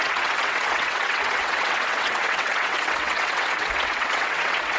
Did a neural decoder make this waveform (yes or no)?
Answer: yes